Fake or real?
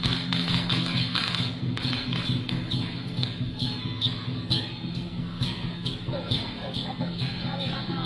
fake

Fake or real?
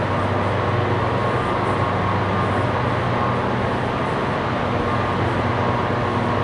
real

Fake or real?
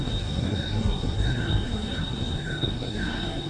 fake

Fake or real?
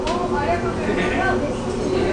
real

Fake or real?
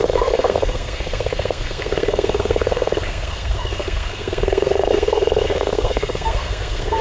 fake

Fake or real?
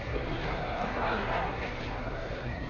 fake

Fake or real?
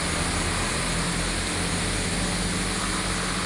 real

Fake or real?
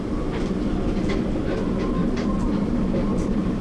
real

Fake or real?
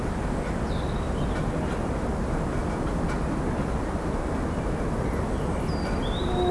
real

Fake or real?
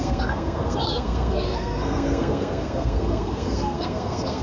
fake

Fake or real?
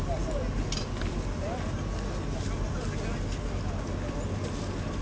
real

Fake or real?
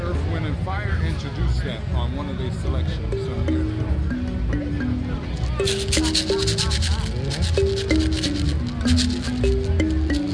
real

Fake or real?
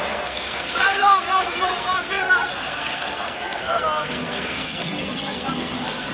fake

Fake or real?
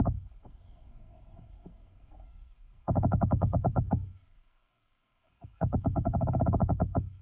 fake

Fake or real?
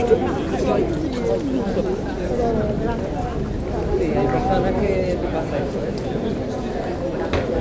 real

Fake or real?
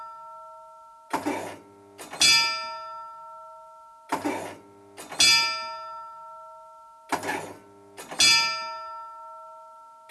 real